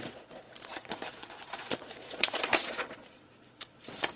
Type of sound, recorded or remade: remade